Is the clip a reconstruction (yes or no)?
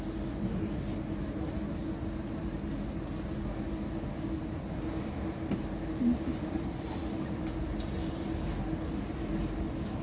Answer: no